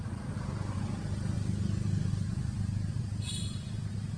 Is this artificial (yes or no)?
no